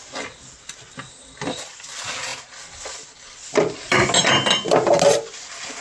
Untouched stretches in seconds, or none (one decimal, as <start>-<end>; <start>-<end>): 0.0-5.8